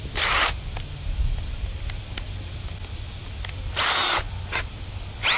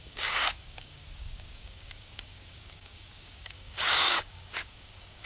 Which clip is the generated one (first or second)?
second